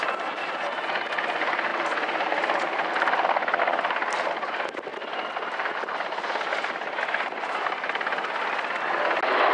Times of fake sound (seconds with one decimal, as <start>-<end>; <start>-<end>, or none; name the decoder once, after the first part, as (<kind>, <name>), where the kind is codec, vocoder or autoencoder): none